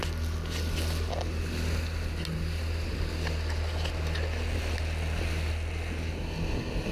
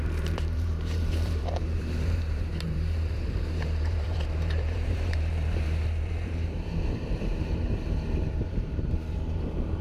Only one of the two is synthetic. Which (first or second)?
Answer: second